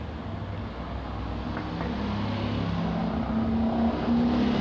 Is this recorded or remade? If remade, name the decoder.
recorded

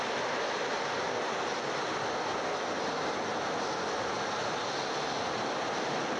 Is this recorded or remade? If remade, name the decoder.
recorded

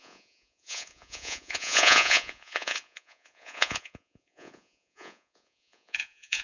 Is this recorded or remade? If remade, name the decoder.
remade, vocoder, Vocos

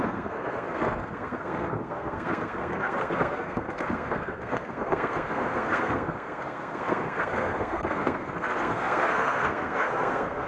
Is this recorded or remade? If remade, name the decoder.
remade, codec, SNAC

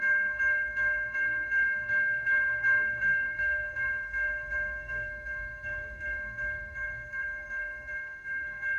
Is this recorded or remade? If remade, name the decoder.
remade, codec, SNAC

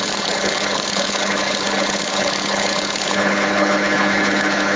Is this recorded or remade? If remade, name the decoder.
remade, codec, HILCodec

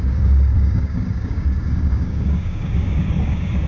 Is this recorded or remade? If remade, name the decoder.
remade, codec, DAC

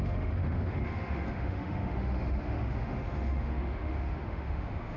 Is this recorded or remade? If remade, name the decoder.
remade, autoencoder, DAC-VAE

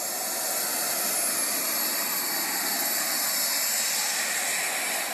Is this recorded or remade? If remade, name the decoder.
recorded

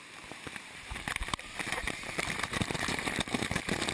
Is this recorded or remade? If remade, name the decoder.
remade, vocoder, BigVGAN v2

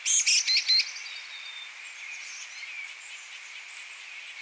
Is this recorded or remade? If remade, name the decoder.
recorded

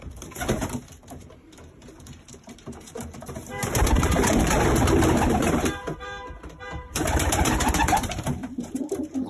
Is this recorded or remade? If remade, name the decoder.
remade, vocoder, BigVGAN v2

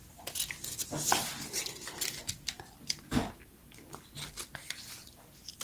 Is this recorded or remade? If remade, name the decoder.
recorded